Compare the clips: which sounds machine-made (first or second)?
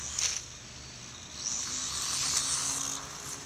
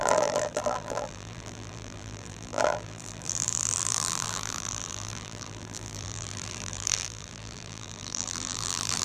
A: second